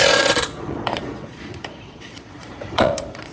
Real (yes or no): no